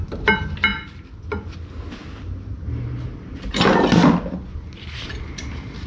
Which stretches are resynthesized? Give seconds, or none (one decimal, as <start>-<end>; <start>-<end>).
none